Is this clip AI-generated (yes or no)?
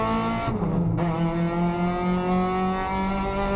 no